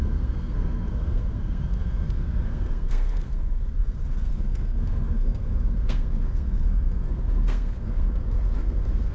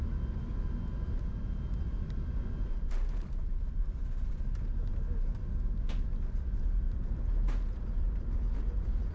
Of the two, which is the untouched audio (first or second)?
second